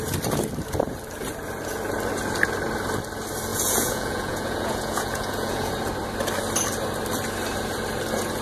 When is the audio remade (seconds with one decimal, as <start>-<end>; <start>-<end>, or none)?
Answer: 3.5-5.7